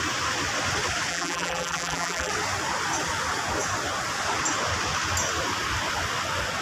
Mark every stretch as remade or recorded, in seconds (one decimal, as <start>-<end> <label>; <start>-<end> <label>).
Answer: 0.0-1.1 recorded; 1.1-2.3 remade; 2.3-6.6 recorded